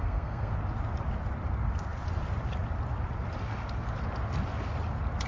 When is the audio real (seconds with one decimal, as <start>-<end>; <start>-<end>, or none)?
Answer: 0.5-5.3